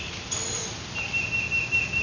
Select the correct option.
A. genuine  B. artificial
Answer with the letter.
A